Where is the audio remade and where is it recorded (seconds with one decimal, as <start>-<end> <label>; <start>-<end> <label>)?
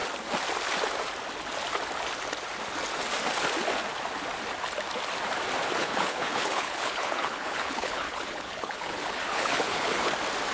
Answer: 0.0-5.8 recorded; 5.8-10.1 remade; 10.1-10.5 recorded